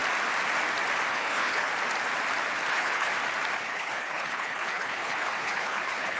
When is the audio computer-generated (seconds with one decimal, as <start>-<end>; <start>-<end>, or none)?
1.1-1.7; 2.7-3.1; 3.6-6.2